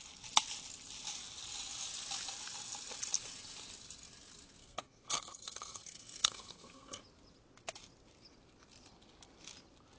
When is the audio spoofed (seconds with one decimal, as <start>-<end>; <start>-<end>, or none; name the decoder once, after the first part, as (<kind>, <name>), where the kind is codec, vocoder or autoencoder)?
4.6-7.0 (codec, SNAC)